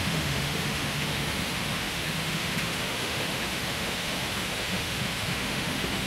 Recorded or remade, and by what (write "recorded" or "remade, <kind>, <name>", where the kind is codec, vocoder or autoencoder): remade, autoencoder, DAC-VAE